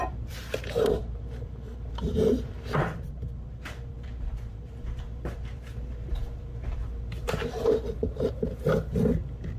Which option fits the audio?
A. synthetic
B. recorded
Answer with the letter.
A